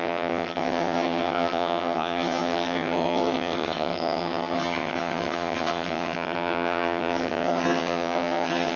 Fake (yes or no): yes